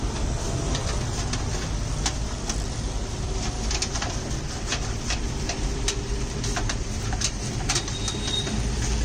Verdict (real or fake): fake